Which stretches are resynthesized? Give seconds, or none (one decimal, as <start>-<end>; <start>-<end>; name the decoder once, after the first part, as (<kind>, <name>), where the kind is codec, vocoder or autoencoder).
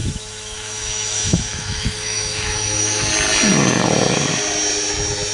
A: 0.0-3.1 (autoencoder, DAC-VAE)